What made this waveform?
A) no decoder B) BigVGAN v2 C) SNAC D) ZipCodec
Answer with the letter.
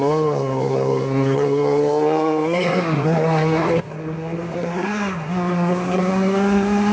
C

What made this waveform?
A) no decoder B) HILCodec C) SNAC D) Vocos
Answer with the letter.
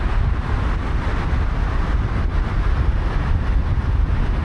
A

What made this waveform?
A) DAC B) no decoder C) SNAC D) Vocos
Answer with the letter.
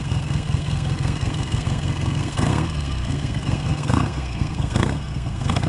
C